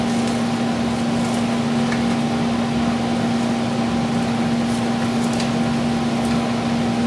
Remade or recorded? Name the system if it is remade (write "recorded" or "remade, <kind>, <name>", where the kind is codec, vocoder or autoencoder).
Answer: recorded